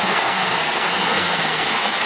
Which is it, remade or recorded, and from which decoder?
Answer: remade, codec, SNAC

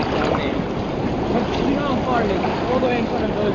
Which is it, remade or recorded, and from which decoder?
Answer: recorded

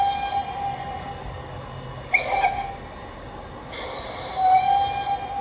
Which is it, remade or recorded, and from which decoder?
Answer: recorded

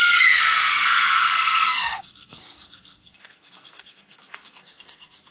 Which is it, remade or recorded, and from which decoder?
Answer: remade, codec, SNAC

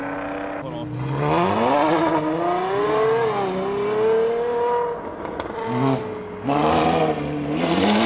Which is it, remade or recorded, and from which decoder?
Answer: recorded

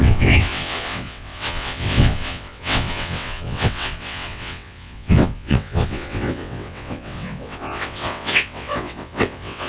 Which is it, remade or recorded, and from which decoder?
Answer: remade, vocoder, WaveNeXt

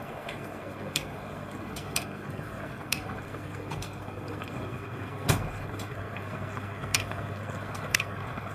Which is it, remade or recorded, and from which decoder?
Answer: remade, codec, SNAC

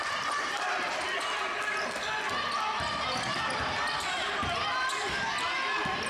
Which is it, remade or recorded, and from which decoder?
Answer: recorded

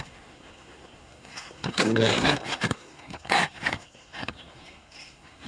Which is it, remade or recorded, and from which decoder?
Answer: remade, codec, SNAC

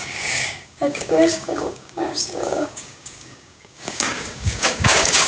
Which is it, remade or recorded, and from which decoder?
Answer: remade, codec, DAC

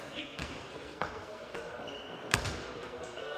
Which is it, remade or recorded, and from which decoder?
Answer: remade, codec, SNAC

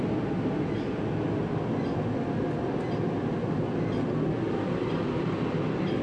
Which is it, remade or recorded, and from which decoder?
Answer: recorded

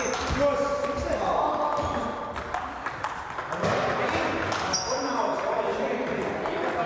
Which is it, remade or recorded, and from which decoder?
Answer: recorded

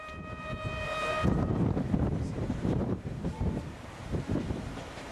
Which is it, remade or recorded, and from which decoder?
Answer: remade, vocoder, BigVGAN v2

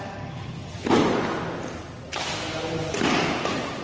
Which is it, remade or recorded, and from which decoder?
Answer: recorded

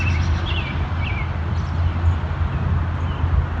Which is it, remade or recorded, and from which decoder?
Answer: recorded